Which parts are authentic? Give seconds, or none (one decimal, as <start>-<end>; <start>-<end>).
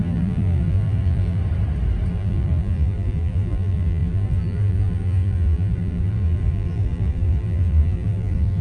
1.4-2.1